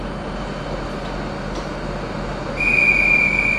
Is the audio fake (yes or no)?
no